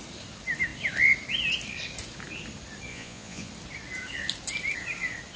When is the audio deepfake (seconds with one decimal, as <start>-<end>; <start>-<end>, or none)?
2.9-3.5